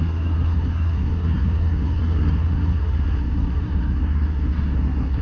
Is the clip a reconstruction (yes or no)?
yes